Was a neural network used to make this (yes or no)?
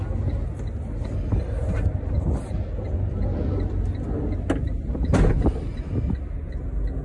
no